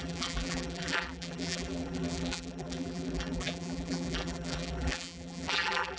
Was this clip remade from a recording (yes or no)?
yes